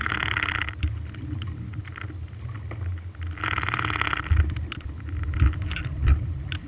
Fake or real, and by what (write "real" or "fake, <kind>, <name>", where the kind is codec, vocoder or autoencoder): real